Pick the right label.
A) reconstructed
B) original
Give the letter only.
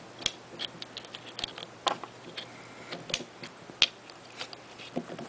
B